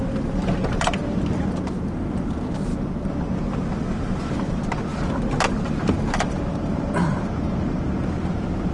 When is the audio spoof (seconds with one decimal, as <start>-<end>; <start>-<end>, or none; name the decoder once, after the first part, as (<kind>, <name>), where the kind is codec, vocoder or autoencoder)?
0.0-2.7 (vocoder, BigVGAN v2); 3.9-4.9; 6.1-8.7